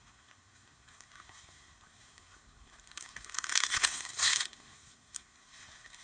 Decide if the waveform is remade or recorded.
remade